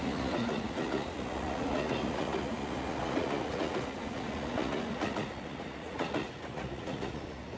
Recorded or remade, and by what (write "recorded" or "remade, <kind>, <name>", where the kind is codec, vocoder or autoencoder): remade, vocoder, Vocos